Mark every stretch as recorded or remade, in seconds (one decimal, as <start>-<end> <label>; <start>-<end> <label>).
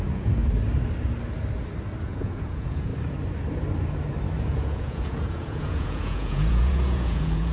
0.0-0.4 remade; 0.4-2.0 recorded; 2.0-2.9 remade; 2.9-4.4 recorded; 4.4-7.5 remade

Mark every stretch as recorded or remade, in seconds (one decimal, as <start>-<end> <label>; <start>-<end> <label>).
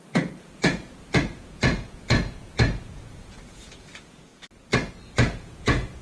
0.0-4.3 remade; 4.3-4.9 recorded; 4.9-6.0 remade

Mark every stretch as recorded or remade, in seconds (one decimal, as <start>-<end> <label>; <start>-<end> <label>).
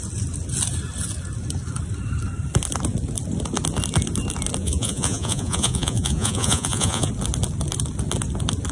0.0-4.6 recorded; 4.6-7.1 remade; 7.1-8.7 recorded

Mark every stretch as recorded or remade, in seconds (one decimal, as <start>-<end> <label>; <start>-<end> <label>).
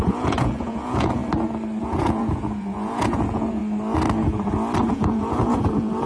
0.0-1.2 remade; 1.2-1.8 recorded; 1.8-3.6 remade; 3.6-4.9 recorded; 4.9-6.1 remade